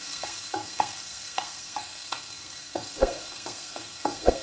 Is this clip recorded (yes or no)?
no